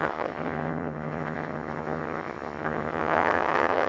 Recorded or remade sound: remade